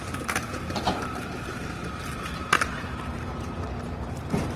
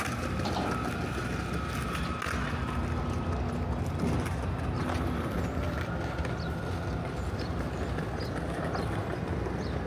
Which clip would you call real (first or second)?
second